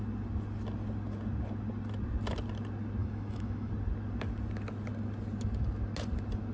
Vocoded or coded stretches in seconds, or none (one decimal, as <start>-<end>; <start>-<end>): 3.0-3.7